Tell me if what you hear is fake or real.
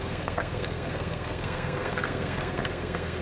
fake